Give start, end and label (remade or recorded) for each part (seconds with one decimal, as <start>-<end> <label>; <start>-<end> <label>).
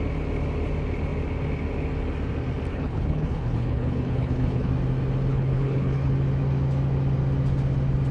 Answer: 0.0-2.7 recorded; 2.7-4.7 remade; 4.7-5.3 recorded; 5.3-6.1 remade; 6.1-8.1 recorded